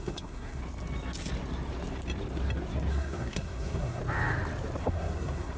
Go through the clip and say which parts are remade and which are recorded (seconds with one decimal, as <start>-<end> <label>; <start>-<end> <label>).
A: 0.0-0.6 remade; 0.6-2.9 recorded; 2.9-4.0 remade; 4.0-4.8 recorded; 4.8-5.6 remade